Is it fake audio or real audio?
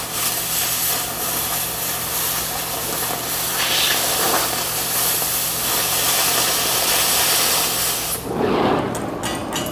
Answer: real